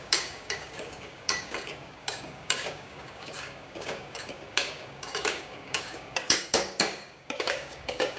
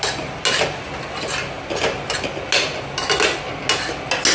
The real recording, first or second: second